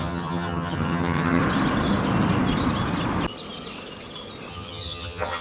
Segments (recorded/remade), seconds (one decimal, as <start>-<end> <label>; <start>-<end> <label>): 0.0-1.4 remade; 1.4-4.5 recorded; 4.5-5.4 remade